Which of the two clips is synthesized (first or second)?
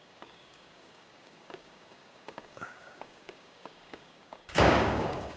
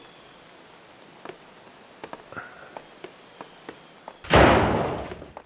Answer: first